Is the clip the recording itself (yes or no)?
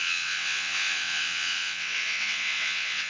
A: no